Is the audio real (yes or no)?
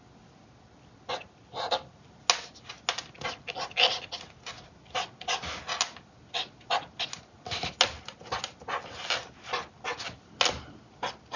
yes